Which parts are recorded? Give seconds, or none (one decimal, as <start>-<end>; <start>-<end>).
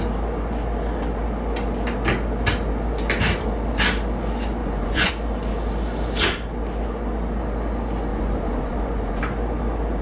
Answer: 0.0-4.6; 5.1-8.1; 9.2-10.0